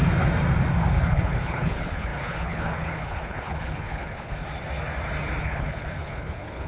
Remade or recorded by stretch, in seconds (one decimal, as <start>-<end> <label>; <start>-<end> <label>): 0.0-1.0 recorded; 1.0-4.4 remade; 4.4-5.4 recorded; 5.4-6.7 remade